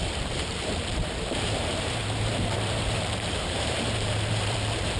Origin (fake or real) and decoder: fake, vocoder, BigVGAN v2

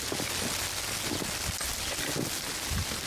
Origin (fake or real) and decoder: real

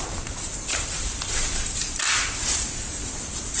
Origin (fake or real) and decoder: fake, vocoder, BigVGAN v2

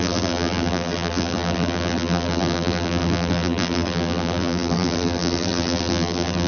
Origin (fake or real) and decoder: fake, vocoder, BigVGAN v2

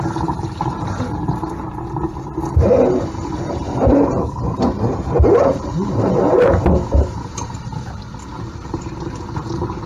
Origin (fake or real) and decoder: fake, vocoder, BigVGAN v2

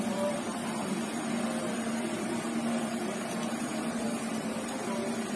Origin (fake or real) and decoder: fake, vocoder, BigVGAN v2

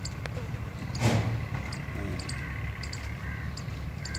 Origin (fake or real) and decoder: real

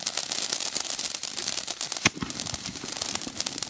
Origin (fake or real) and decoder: fake, vocoder, BigVGAN v2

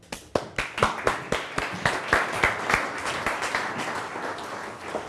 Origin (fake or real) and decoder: real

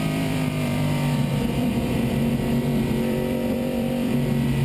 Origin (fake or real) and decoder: fake, vocoder, BigVGAN v2